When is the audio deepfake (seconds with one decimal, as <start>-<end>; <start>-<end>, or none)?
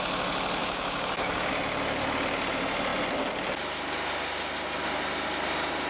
0.6-1.5